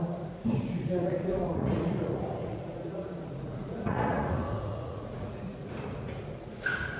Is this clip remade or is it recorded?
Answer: remade